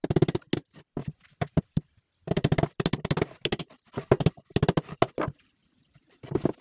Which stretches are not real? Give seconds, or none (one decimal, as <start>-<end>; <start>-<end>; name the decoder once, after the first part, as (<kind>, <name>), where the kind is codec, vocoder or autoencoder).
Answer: 1.0-1.6 (vocoder, BigVGAN v2); 5.6-6.6